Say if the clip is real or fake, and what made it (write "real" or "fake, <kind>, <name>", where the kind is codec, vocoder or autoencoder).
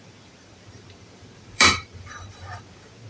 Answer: fake, vocoder, BigVGAN v2